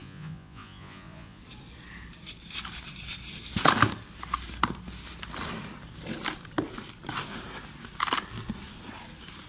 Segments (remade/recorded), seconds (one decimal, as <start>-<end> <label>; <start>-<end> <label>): 0.0-1.4 remade; 1.4-9.5 recorded